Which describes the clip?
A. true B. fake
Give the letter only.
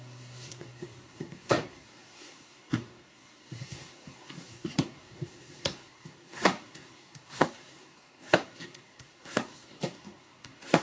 B